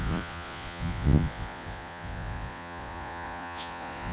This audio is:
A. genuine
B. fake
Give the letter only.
B